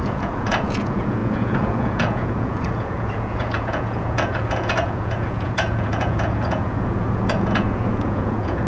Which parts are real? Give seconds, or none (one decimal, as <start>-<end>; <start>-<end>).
none